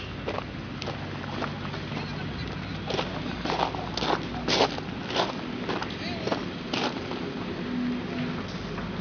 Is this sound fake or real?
real